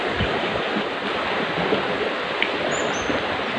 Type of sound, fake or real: real